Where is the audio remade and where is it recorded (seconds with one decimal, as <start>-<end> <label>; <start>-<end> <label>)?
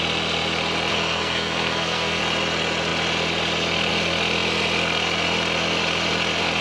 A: 0.0-0.9 recorded; 0.9-2.2 remade; 2.2-6.6 recorded